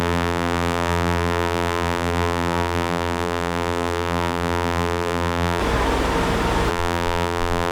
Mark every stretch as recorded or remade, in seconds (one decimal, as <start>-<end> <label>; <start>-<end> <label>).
0.0-5.6 remade; 5.6-6.7 recorded; 6.7-7.7 remade